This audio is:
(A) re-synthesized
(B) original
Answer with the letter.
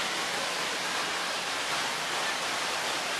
B